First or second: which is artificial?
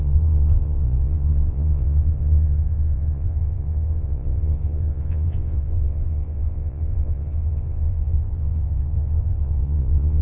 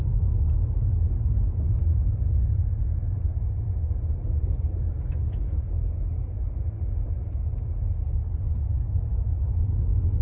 first